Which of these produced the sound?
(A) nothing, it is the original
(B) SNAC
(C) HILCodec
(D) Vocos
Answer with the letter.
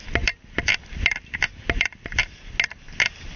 A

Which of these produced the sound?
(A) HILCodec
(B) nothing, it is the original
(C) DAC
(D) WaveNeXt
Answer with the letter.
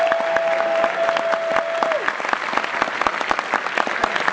B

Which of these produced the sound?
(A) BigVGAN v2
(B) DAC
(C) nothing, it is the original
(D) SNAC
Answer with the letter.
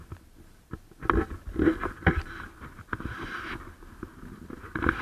C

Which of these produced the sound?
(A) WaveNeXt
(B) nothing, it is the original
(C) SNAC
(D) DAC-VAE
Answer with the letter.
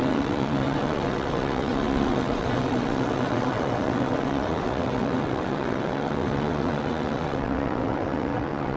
A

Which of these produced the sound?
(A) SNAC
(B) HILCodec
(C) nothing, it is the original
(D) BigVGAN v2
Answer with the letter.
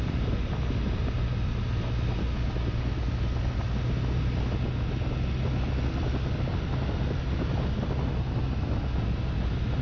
C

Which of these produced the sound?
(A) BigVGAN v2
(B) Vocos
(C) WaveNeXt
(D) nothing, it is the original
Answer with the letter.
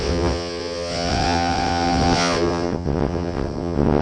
C